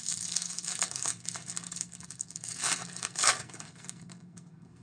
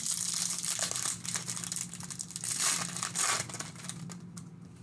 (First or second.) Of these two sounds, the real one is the second